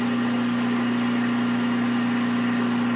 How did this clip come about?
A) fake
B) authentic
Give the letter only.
B